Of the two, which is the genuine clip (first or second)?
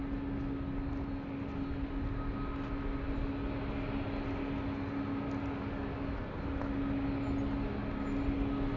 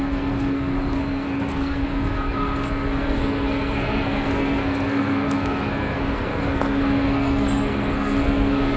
first